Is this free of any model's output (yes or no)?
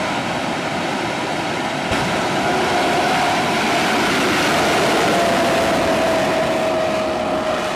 yes